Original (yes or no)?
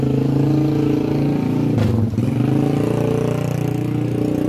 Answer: yes